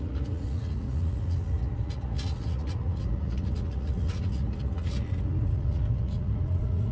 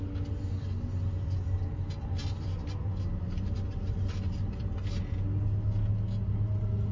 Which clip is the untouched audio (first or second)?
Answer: second